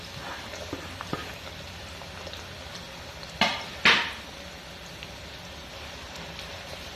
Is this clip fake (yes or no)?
no